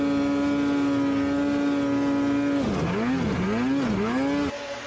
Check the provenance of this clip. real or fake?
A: real